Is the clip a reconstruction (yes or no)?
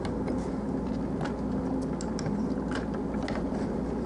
no